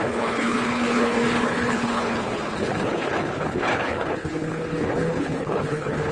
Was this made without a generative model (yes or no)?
no